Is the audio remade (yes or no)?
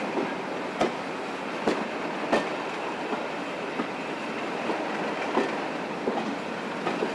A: no